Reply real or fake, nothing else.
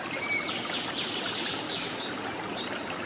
real